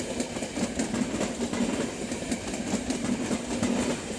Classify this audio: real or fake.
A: real